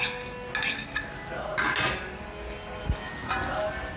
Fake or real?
real